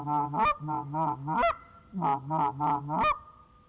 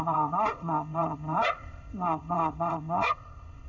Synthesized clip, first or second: second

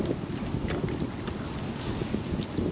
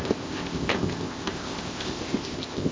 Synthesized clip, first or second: second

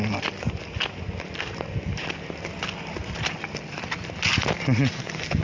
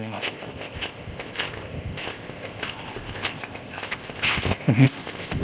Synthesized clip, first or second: second